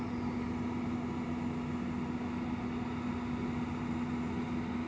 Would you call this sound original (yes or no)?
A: yes